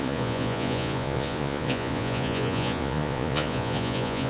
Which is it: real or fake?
fake